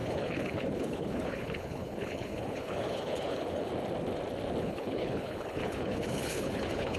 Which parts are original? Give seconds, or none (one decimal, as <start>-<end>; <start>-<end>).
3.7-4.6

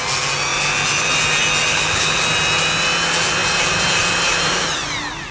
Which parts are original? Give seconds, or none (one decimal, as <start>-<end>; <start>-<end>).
0.0-1.7; 2.2-5.3

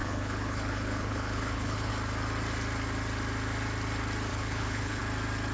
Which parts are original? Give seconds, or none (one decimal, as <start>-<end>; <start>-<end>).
1.9-4.3; 5.0-5.5

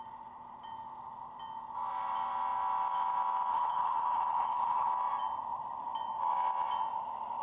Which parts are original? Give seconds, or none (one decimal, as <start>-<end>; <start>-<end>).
0.0-3.5; 4.9-7.4

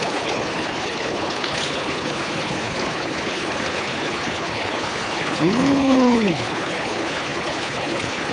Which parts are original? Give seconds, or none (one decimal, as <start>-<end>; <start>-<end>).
none

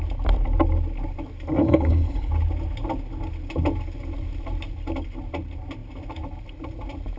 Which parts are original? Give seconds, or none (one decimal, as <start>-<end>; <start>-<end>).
0.0-1.6; 2.3-7.2

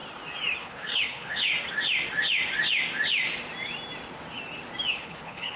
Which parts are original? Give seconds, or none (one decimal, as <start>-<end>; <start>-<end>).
0.0-0.6; 1.5-4.9

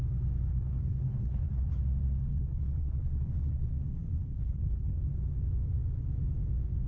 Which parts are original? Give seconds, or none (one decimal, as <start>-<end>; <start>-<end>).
0.0-0.5; 1.8-2.3; 3.7-4.2; 5.0-6.9